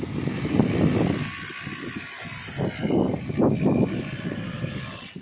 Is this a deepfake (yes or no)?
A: no